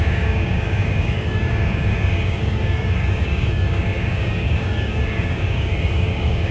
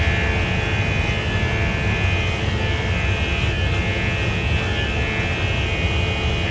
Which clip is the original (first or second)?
second